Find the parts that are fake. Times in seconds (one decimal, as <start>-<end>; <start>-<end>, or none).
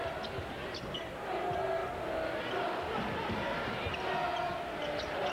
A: none